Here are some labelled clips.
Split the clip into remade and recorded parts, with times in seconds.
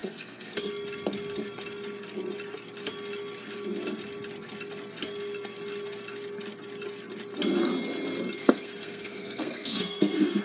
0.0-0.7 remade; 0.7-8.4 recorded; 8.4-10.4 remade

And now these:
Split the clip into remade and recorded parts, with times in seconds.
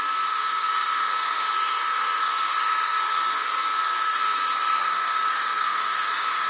0.0-6.5 remade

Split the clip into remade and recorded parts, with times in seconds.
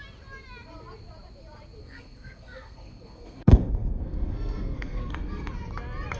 0.0-1.8 recorded; 1.8-5.5 remade; 5.5-6.2 recorded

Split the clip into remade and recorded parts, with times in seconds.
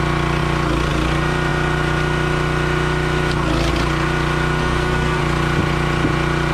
0.0-4.6 recorded; 4.6-5.2 remade; 5.2-6.5 recorded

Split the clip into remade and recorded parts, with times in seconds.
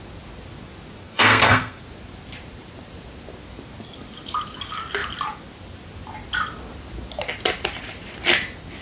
0.0-1.0 recorded; 1.0-1.8 remade; 1.8-8.8 recorded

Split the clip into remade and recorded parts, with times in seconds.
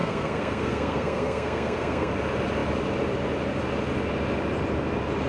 0.0-2.1 remade; 2.1-5.3 recorded